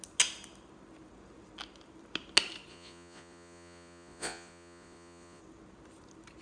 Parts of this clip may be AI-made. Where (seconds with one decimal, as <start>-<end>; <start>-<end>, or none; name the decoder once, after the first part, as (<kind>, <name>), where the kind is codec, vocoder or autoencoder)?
2.7-5.4 (vocoder, Vocos)